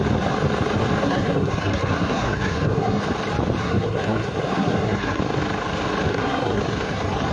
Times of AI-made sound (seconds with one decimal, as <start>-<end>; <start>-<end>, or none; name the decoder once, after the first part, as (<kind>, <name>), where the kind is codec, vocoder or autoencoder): 1.0-3.0 (codec, SNAC); 3.6-5.2; 6.1-6.6